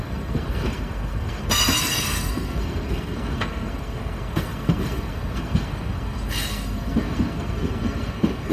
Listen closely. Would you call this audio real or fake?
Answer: fake